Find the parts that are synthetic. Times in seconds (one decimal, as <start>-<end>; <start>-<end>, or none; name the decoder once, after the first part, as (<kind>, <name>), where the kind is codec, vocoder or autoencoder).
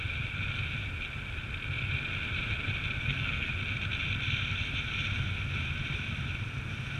3.0-3.5 (codec, SNAC)